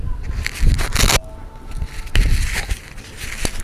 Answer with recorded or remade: recorded